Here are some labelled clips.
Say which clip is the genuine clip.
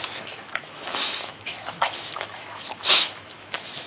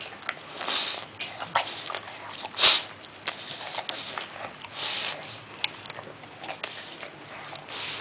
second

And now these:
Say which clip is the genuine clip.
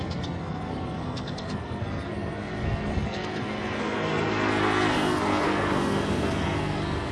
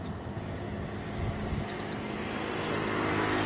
second